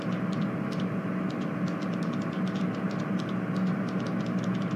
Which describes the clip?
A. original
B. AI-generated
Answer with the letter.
A